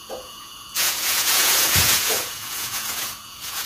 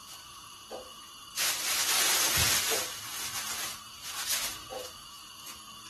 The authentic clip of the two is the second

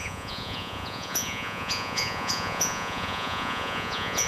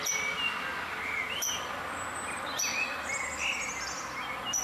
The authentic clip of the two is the second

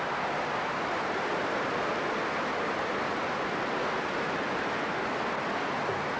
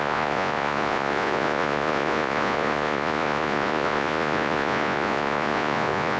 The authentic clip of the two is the first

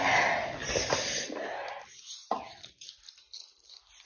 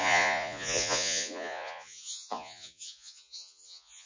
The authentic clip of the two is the first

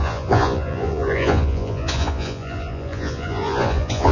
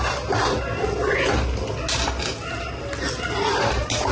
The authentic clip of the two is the second